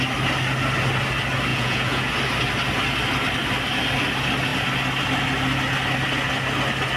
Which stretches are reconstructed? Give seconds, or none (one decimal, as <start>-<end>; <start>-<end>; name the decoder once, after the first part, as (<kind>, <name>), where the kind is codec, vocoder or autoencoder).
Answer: 1.5-2.1 (vocoder, Vocos)